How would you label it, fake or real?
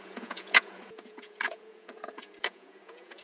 fake